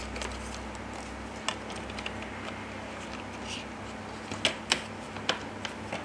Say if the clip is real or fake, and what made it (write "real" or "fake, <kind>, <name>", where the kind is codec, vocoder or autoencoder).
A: real